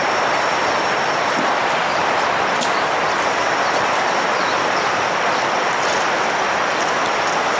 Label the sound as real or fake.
fake